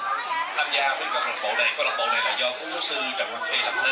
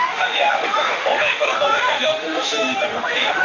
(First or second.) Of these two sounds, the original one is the first